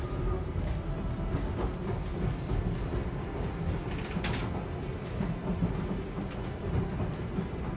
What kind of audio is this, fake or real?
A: real